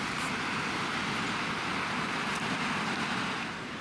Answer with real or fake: fake